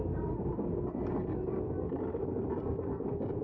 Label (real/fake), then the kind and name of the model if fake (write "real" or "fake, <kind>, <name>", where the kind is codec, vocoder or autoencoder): real